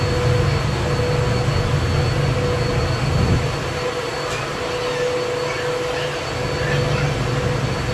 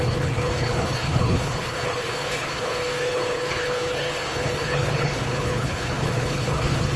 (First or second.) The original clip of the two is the first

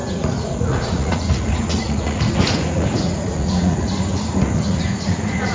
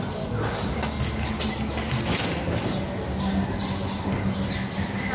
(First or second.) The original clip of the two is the second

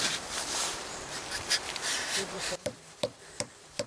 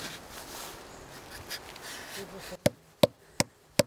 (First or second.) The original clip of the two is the second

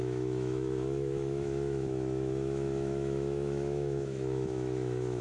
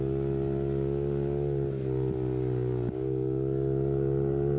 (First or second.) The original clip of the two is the second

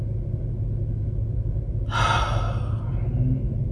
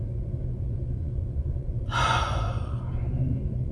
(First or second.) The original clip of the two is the first